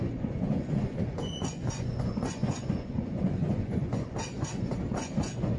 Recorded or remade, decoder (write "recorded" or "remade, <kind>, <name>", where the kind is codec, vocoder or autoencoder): remade, vocoder, Vocos